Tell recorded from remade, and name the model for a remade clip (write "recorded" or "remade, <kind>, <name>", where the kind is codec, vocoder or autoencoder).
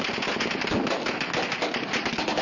recorded